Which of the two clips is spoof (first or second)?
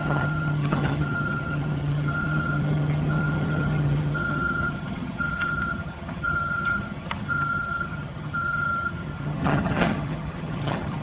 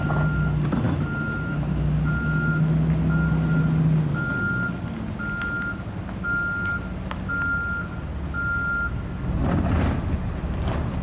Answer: first